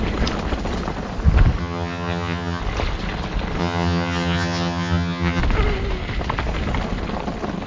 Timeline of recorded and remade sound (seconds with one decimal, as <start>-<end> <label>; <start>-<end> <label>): 0.0-1.6 recorded; 1.6-2.6 remade; 2.6-3.6 recorded; 3.6-5.4 remade; 5.4-7.7 recorded